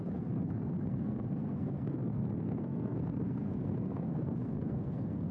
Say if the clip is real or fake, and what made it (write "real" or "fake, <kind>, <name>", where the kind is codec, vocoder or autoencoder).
fake, codec, SNAC